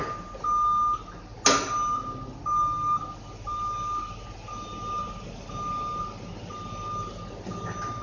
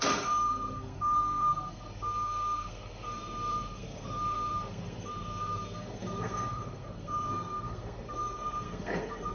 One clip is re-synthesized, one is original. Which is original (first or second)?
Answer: first